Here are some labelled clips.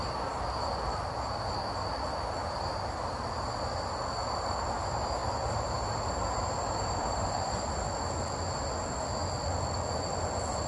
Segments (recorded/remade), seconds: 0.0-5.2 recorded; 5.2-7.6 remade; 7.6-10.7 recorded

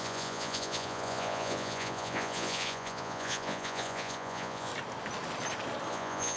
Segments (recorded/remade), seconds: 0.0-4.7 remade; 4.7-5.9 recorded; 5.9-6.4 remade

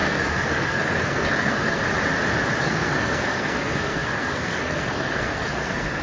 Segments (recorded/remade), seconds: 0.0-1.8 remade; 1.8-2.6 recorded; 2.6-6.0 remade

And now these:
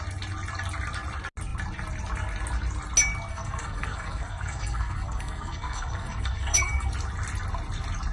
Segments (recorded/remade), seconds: 0.0-3.3 recorded; 3.3-6.9 remade; 6.9-8.1 recorded